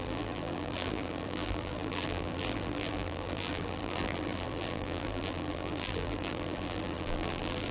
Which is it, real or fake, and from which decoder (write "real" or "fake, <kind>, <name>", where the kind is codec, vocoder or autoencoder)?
fake, vocoder, BigVGAN v2